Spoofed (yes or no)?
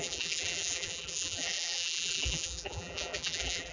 yes